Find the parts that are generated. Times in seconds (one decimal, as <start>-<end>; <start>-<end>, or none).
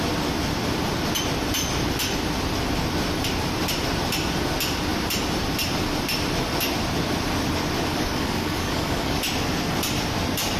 7.9-9.2